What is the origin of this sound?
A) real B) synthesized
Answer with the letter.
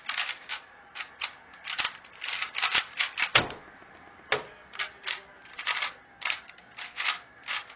A